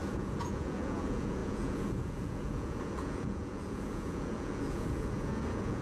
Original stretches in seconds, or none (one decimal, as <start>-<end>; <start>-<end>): none